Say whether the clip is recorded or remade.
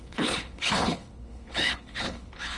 remade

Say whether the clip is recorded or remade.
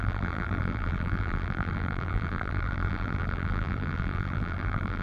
remade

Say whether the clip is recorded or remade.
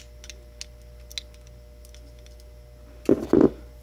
recorded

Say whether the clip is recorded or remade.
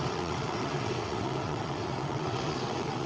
remade